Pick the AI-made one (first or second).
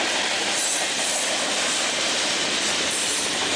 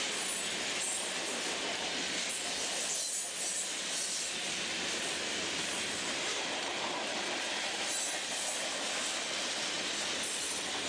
first